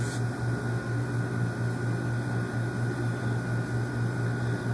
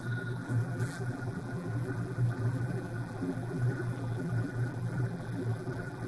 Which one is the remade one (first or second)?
second